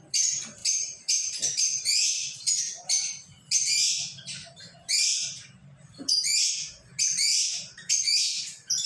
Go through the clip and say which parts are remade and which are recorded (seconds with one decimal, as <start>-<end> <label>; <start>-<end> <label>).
0.0-0.6 recorded; 0.6-2.6 remade; 2.6-4.4 recorded; 4.4-6.5 remade; 6.5-7.1 recorded; 7.1-8.0 remade; 8.0-8.9 recorded